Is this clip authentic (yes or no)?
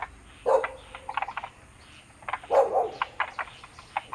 yes